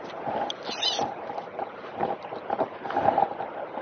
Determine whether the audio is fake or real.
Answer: real